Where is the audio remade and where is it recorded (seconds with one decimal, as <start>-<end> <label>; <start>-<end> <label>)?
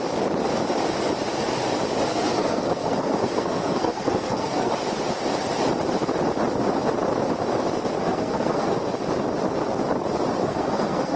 0.0-2.1 recorded; 2.1-4.7 remade; 4.7-8.0 recorded; 8.0-8.8 remade; 8.8-10.4 recorded; 10.4-11.2 remade